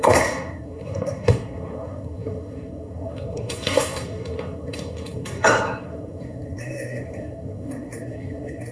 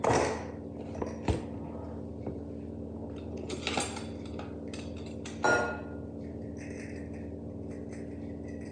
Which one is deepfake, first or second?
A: first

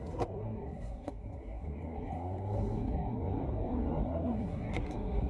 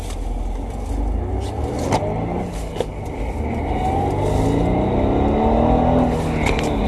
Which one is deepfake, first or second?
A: first